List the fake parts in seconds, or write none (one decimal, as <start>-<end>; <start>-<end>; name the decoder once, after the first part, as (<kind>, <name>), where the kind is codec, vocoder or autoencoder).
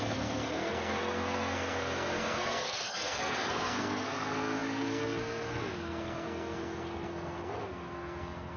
0.0-8.6 (codec, SNAC)